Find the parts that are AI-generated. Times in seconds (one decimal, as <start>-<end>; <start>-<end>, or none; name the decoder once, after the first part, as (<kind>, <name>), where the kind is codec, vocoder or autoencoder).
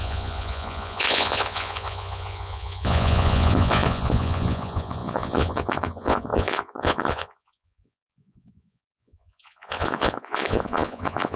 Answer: 0.0-11.4 (vocoder, Vocos)